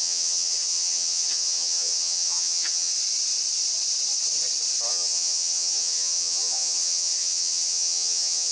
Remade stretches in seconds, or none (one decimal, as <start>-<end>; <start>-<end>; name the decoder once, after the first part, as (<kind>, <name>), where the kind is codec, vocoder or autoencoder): 0.0-2.9 (vocoder, HiFi-GAN); 4.9-8.5